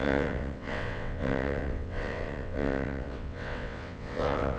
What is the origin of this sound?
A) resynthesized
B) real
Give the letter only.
A